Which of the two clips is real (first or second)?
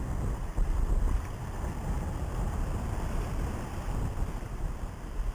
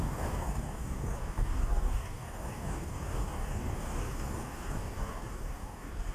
first